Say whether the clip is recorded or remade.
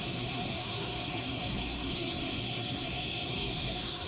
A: remade